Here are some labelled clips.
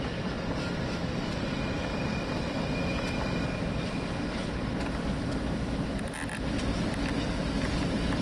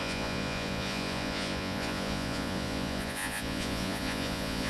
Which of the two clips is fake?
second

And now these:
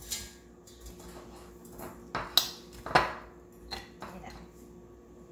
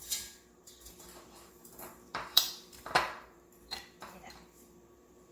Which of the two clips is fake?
second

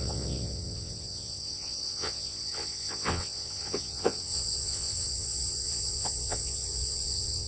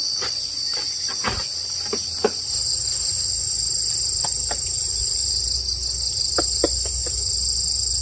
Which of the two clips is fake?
first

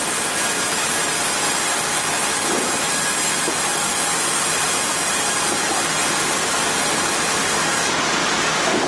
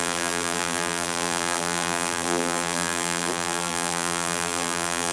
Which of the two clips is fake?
second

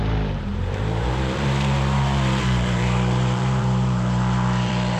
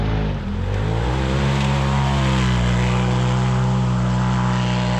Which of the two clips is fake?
first